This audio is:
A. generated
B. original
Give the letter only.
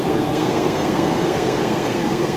A